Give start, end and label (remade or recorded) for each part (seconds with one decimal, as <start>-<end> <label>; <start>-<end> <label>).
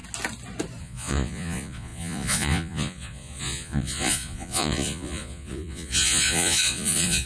0.0-0.8 recorded; 0.8-7.3 remade